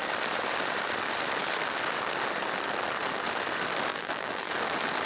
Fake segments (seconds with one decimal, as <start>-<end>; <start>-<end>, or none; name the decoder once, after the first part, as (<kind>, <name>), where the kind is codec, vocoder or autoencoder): 3.9-4.5 (vocoder, BigVGAN v2)